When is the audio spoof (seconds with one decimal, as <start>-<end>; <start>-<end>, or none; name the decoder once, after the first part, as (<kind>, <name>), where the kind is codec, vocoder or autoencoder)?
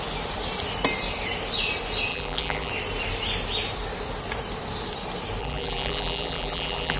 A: 2.1-2.7 (vocoder, BigVGAN v2); 5.4-7.0